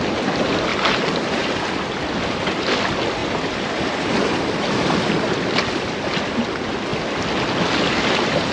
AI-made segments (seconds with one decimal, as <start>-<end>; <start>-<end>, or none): none